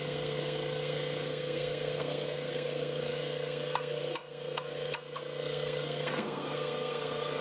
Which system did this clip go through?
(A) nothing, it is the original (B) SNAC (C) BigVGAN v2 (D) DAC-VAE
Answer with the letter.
B